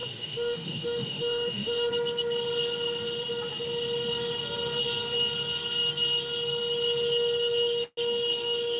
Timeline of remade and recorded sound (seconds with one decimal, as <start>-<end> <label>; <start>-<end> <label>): 0.0-1.9 remade; 1.9-8.8 recorded